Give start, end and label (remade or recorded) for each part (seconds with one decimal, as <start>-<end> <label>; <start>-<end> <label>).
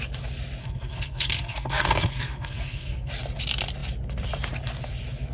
0.0-0.6 recorded; 0.6-3.1 remade; 3.1-5.3 recorded